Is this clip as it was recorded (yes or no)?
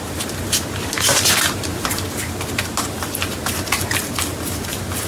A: no